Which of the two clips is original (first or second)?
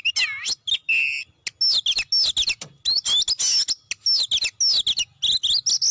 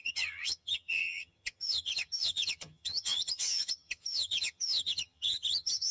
first